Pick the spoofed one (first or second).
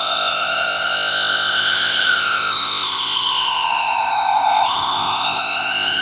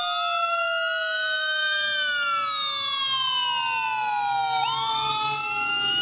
first